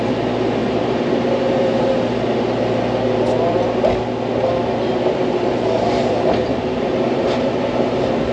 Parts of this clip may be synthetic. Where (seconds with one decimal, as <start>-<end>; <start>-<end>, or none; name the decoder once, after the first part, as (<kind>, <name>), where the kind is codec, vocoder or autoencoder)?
0.6-1.9 (vocoder, BigVGAN v2); 6.5-8.3